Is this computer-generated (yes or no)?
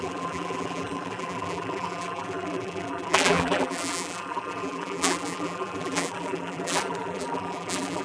yes